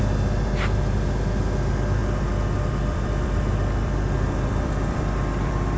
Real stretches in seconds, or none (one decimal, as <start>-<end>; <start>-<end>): 0.0-2.0